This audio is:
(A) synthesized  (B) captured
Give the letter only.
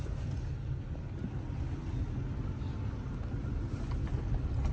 B